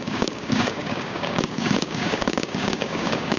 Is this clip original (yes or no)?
no